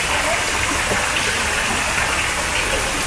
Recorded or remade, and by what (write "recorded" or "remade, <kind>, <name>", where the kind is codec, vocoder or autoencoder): recorded